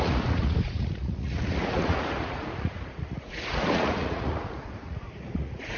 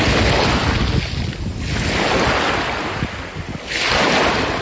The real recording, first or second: second